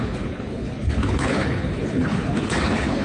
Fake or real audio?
fake